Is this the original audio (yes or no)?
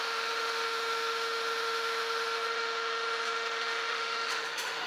no